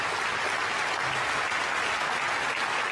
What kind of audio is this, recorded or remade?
recorded